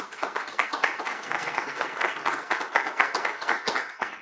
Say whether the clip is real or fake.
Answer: fake